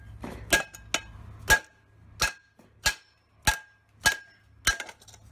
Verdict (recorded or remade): recorded